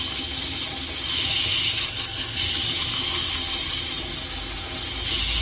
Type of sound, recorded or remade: recorded